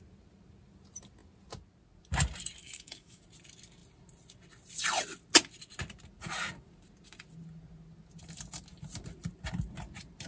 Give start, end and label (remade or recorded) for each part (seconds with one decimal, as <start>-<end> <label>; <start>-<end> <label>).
0.0-2.6 recorded; 2.6-3.2 remade; 3.2-10.3 recorded